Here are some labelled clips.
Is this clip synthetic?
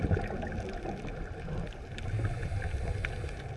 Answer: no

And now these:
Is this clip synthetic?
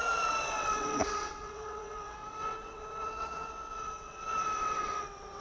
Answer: yes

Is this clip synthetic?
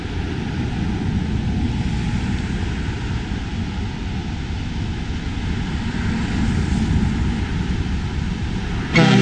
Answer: no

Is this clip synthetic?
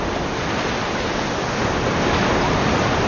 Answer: no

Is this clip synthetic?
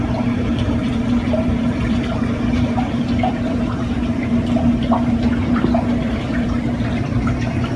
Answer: yes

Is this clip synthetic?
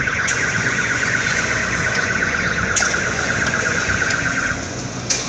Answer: yes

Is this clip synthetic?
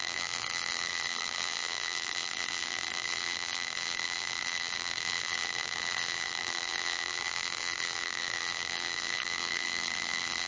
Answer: yes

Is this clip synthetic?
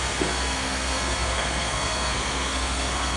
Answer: yes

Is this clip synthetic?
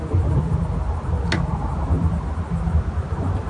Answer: no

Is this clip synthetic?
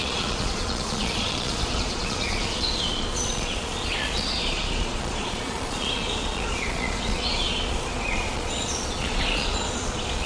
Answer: yes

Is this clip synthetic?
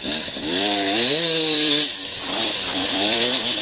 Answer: yes